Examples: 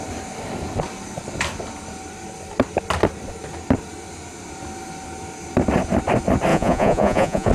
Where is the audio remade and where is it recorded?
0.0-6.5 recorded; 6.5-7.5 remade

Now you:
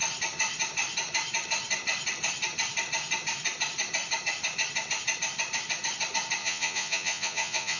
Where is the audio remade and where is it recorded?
0.0-6.4 recorded; 6.4-7.8 remade

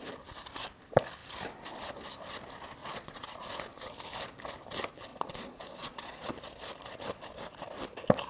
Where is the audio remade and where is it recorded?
0.0-2.8 recorded; 2.8-3.5 remade; 3.5-5.1 recorded; 5.1-6.3 remade; 6.3-8.3 recorded

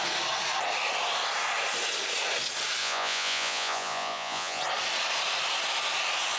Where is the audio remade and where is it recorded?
0.0-2.8 recorded; 2.8-4.6 remade; 4.6-6.4 recorded